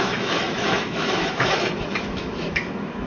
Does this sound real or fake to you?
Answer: fake